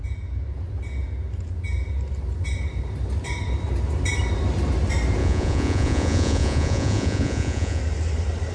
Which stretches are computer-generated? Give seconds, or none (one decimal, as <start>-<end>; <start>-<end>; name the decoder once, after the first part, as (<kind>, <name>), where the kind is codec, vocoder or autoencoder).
5.2-7.8 (vocoder, Vocos)